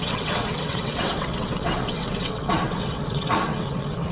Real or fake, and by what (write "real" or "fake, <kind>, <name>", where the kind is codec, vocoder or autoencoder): fake, vocoder, WaveNeXt